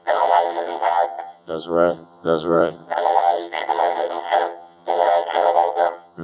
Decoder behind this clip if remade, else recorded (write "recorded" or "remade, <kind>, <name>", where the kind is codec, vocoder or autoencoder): remade, vocoder, HiFi-GAN